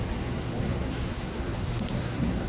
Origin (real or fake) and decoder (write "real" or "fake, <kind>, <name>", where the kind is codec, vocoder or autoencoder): fake, codec, SNAC